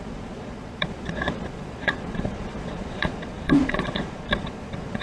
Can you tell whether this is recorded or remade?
remade